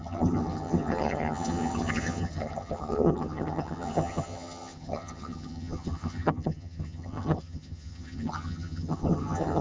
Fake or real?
fake